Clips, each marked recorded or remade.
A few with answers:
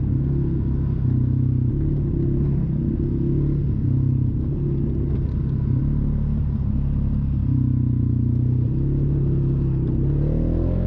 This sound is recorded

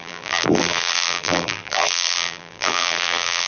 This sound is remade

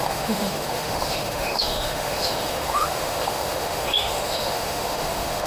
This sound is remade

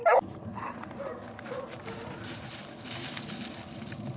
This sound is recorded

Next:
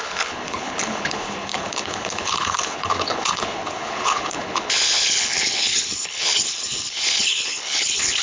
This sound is remade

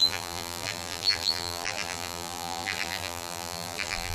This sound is remade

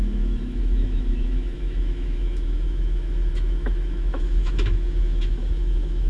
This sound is remade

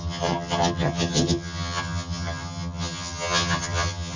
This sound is remade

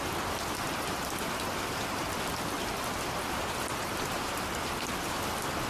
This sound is recorded